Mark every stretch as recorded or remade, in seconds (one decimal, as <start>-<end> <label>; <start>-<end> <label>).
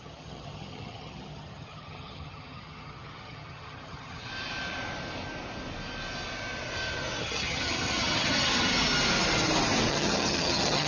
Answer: 0.0-4.3 remade; 4.3-7.2 recorded; 7.2-8.5 remade; 8.5-9.9 recorded; 9.9-10.9 remade